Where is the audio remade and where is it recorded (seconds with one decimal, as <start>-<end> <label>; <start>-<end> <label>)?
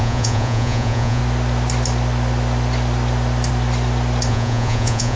0.0-1.2 remade; 1.2-4.3 recorded; 4.3-5.2 remade